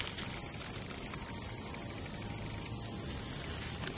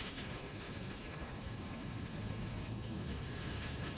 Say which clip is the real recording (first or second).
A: first